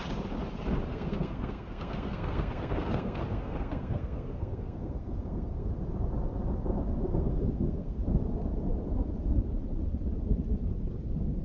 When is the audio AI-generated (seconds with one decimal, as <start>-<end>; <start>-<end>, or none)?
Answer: 0.9-5.7; 7.1-8.0